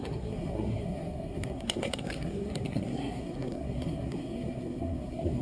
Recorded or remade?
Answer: remade